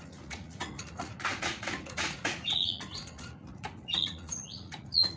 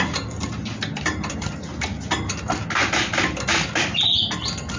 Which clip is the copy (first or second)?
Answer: first